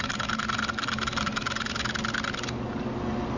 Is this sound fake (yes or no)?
no